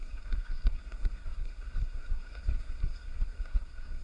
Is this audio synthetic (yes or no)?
yes